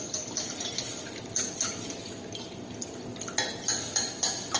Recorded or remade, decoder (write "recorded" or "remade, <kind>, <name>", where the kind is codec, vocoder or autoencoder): recorded